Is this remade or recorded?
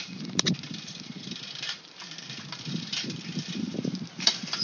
remade